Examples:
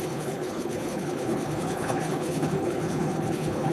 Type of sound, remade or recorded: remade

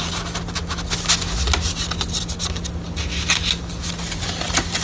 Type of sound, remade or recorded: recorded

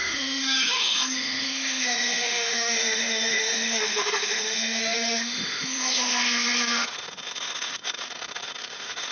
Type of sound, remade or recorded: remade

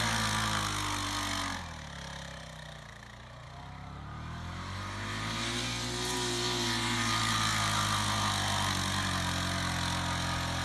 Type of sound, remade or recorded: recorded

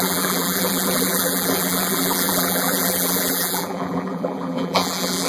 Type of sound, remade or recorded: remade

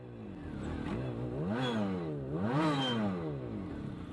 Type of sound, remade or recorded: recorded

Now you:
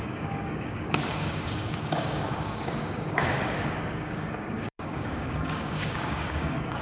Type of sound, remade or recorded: remade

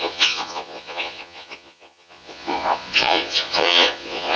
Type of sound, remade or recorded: remade